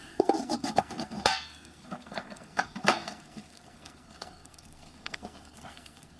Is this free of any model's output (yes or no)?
no